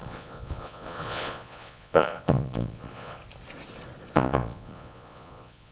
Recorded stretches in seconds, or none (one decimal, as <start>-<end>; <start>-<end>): 3.2-4.1

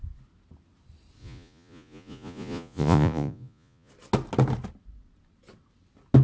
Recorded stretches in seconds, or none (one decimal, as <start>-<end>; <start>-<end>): 0.0-1.2; 3.9-6.2

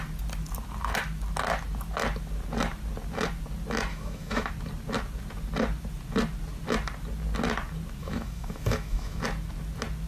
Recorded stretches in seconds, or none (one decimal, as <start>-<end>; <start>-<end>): 0.0-3.9; 4.5-8.0; 9.2-10.1

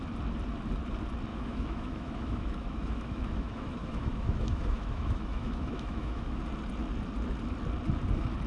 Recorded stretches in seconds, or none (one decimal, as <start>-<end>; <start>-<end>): 0.0-1.3; 6.4-8.5

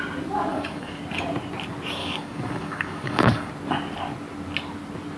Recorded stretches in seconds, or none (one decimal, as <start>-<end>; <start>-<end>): 0.0-0.5; 1.0-2.0; 3.5-5.2

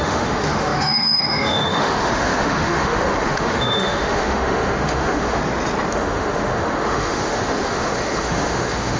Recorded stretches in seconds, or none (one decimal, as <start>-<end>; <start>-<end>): 5.4-5.9

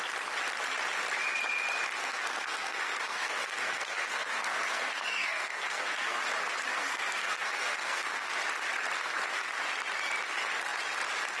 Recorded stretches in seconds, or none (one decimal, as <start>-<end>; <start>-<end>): 0.0-2.0; 6.2-6.7; 8.4-11.4